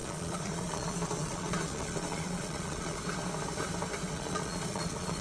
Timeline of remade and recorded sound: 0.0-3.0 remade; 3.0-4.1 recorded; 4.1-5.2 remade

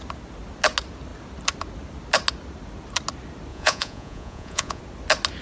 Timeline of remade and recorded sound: 0.0-3.5 recorded; 3.5-4.8 remade; 4.8-5.4 recorded

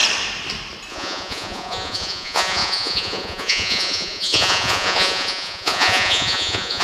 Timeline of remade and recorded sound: 0.0-0.9 recorded; 0.9-6.8 remade

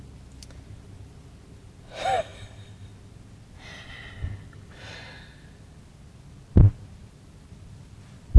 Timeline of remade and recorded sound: 0.0-8.4 recorded

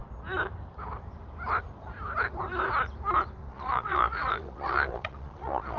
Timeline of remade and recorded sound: 0.0-3.4 recorded; 3.4-5.8 remade